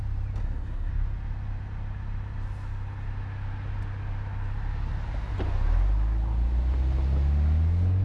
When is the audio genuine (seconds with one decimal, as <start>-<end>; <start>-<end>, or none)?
0.0-0.4; 0.9-8.0